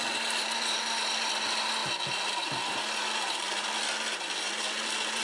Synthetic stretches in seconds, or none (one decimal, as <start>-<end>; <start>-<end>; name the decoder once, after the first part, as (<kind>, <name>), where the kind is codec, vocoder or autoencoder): none